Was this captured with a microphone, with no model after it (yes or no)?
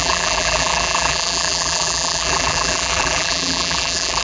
no